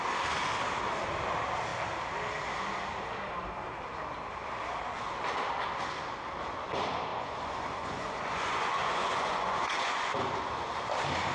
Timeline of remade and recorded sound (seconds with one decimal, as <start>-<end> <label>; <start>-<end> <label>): 0.0-7.1 recorded; 7.1-10.3 remade; 10.3-11.3 recorded